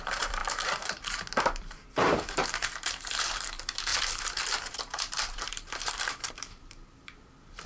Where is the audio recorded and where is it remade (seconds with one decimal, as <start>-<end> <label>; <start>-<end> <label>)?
0.0-0.4 remade; 0.4-1.6 recorded; 1.6-7.7 remade